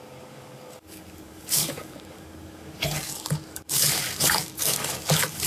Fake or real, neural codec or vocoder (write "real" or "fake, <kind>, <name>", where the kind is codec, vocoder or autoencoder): fake, codec, DAC